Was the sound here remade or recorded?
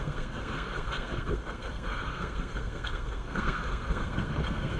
remade